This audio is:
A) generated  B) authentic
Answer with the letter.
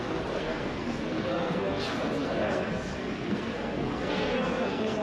A